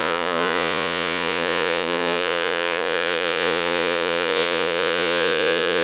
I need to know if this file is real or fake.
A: fake